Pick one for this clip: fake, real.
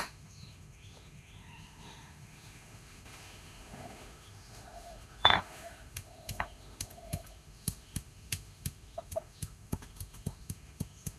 fake